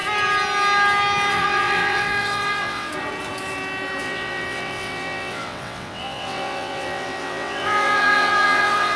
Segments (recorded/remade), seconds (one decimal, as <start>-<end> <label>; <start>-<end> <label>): 0.0-1.3 recorded; 1.3-2.9 remade; 2.9-4.0 recorded; 4.0-9.0 remade